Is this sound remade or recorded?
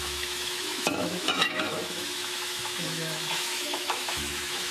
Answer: remade